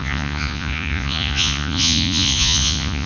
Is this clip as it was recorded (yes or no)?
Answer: no